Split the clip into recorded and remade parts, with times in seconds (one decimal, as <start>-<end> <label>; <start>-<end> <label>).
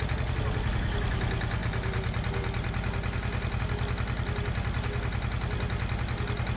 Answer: 0.0-6.6 recorded